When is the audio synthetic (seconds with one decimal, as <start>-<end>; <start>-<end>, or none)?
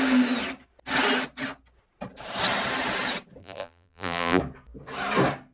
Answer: 3.4-4.4